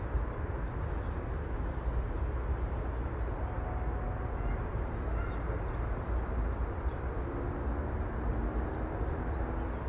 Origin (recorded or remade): recorded